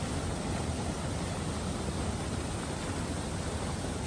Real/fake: real